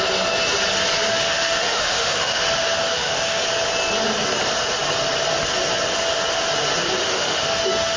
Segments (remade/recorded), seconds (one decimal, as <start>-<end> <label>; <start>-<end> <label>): 0.0-1.1 recorded; 1.1-3.4 remade; 3.4-7.0 recorded; 7.0-8.0 remade